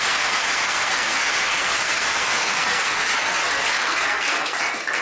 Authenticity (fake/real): fake